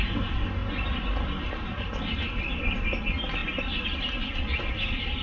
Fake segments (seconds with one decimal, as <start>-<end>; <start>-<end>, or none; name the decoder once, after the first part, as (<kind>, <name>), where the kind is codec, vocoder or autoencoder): none